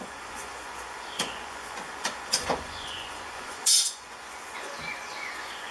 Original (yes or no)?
no